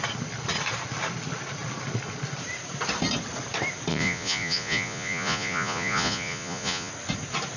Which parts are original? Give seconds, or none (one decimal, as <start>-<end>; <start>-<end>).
0.0-3.9; 6.9-7.6